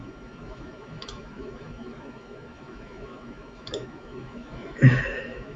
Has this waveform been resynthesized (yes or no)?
yes